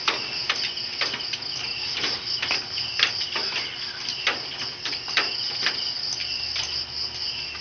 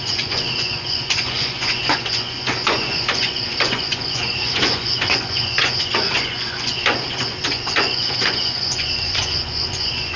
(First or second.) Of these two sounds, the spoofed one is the second